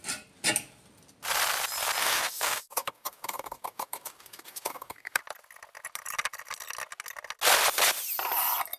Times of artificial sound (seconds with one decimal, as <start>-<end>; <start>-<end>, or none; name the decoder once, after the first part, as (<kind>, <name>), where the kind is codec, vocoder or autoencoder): 2.0-5.2 (codec, DAC)